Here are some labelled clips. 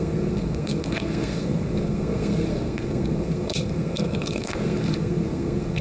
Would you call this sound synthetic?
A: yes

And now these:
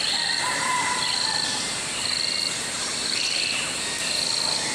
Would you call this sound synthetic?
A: no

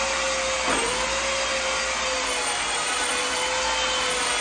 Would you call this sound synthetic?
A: no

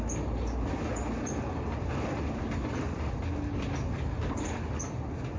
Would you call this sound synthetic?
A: no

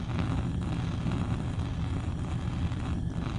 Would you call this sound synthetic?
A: no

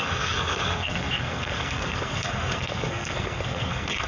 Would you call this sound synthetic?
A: yes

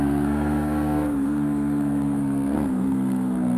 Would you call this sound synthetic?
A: yes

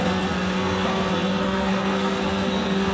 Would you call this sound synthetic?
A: yes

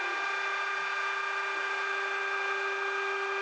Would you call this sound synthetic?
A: no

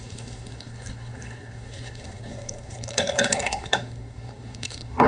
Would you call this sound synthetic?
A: yes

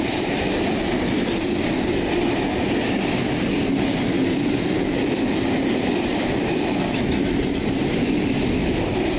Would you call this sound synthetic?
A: no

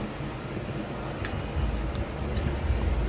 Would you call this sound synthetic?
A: no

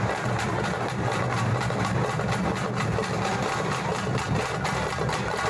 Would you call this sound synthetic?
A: no